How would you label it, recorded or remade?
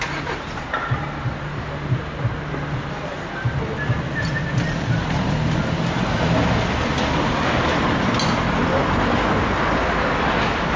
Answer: recorded